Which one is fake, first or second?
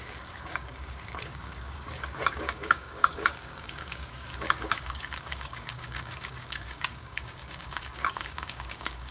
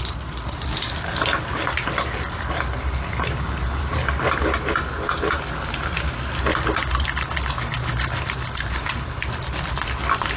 first